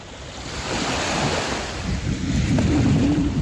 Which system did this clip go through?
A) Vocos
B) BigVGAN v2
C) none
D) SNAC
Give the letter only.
C